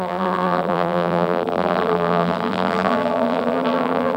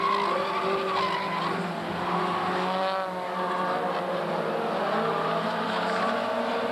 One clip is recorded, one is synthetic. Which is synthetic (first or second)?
first